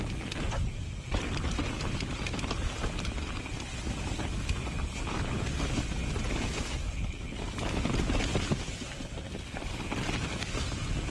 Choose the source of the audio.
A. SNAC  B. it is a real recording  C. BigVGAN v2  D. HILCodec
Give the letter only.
B